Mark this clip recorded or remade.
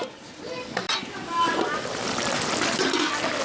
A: recorded